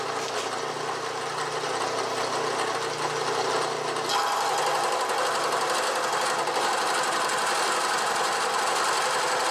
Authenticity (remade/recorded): recorded